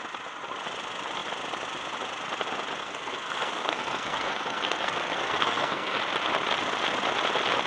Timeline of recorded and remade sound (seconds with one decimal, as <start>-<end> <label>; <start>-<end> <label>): 0.0-2.8 recorded; 2.8-6.0 remade; 6.0-7.7 recorded